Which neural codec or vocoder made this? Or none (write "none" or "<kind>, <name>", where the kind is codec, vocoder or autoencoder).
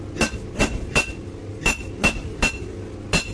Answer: none